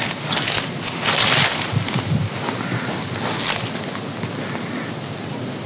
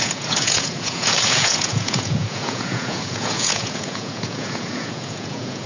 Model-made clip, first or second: second